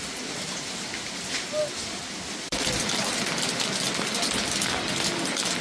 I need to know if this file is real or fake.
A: real